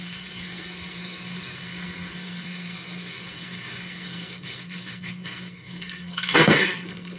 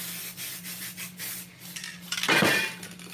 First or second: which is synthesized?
first